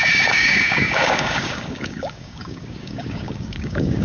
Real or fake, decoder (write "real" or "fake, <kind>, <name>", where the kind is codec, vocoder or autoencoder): fake, codec, DAC